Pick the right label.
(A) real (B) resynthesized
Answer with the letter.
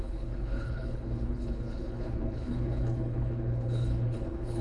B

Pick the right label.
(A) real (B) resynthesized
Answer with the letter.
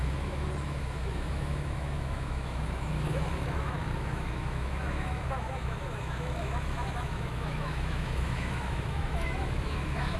B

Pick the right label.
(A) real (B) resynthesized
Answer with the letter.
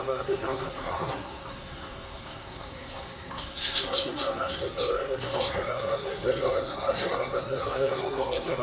B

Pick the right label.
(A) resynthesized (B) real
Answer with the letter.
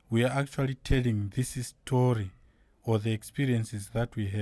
B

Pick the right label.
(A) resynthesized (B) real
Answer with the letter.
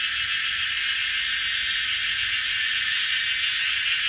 B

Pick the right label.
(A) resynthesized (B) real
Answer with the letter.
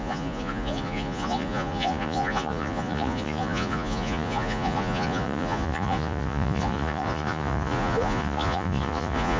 A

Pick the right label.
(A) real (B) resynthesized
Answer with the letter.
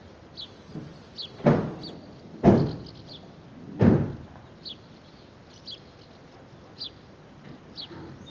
A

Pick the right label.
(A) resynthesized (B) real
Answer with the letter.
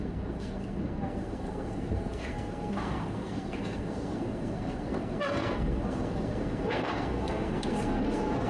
A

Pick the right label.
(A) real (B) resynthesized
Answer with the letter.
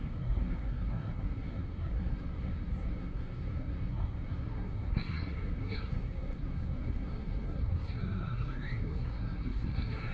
B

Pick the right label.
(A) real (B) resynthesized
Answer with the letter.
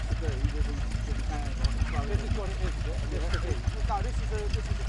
A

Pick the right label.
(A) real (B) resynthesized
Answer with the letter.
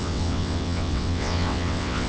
B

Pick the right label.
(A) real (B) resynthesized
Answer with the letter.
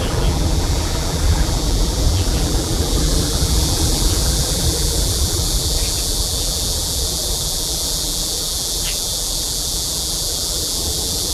B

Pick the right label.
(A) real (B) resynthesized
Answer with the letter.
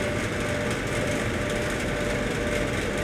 B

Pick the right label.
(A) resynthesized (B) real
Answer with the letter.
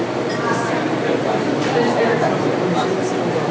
B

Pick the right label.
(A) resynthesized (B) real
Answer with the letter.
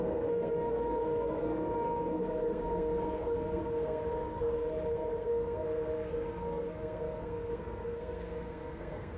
A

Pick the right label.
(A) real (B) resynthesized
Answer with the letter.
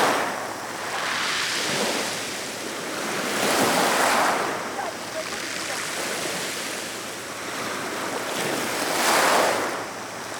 A